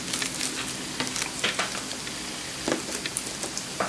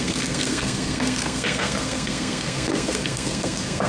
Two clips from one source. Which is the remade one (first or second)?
second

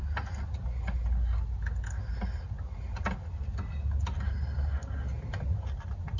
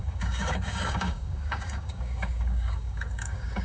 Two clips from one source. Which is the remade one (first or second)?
second